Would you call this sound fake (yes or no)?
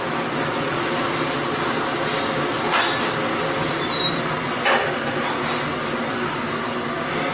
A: no